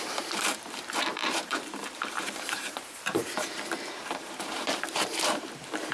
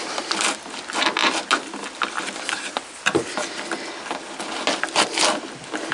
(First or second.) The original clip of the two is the second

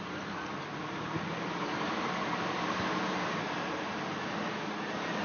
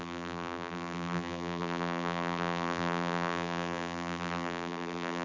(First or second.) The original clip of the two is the first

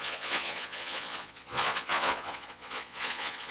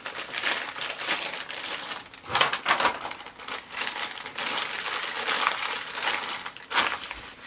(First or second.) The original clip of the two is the second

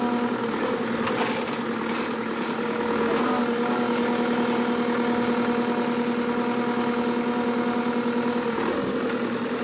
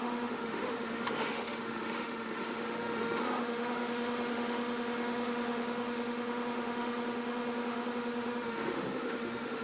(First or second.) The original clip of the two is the first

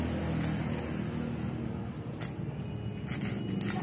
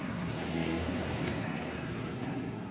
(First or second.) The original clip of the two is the first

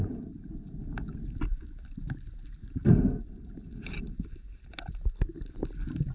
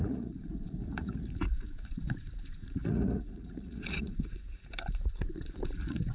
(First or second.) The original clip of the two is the first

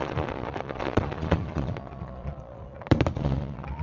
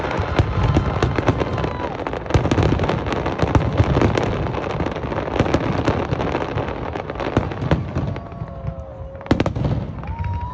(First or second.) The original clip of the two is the second